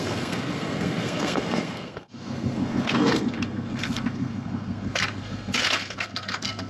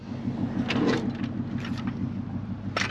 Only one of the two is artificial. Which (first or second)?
first